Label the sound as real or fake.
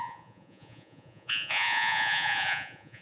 fake